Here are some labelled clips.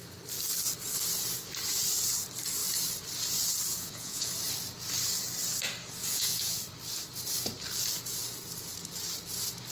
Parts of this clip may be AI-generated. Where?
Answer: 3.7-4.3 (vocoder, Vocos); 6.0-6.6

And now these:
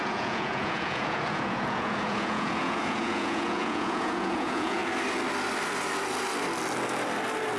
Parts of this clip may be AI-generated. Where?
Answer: 0.0-4.8 (vocoder, Vocos)

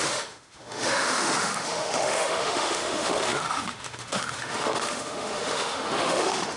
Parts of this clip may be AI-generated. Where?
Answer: 0.0-6.6 (autoencoder, DAC-VAE)

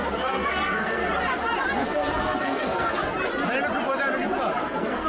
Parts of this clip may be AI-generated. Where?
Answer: 0.0-1.0 (codec, SNAC); 1.8-3.0; 4.6-5.1

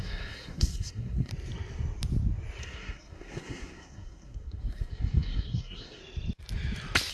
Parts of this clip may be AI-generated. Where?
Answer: 0.0-1.3 (codec, SNAC); 2.6-6.0